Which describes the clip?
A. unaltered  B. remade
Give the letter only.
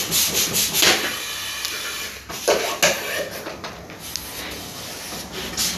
A